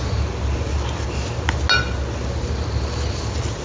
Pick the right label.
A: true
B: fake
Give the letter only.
A